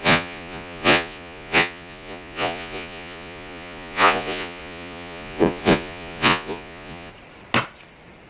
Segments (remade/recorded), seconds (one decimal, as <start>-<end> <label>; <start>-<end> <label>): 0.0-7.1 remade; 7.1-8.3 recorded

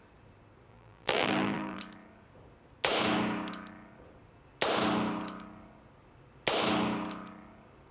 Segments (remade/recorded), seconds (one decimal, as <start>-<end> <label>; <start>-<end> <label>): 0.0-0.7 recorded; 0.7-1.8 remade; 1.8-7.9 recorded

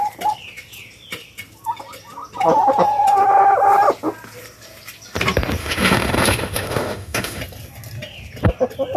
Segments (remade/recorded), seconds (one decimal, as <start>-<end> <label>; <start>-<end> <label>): 0.0-5.6 recorded; 5.6-7.4 remade; 7.4-9.0 recorded

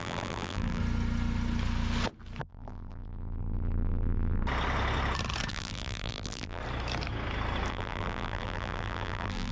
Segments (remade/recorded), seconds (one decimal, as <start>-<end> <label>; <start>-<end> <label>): 0.0-0.8 remade; 0.8-2.5 recorded; 2.5-4.4 remade; 4.4-5.5 recorded; 5.5-6.6 remade; 6.6-7.7 recorded; 7.7-9.5 remade

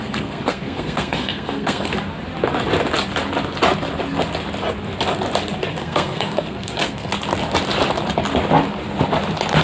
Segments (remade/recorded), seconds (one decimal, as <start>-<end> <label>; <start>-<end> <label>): 0.0-1.9 remade; 1.9-5.7 recorded; 5.7-7.1 remade; 7.1-9.6 recorded

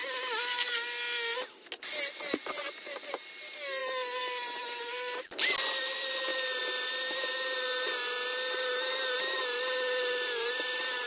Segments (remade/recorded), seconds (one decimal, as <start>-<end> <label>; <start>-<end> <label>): 0.0-11.1 recorded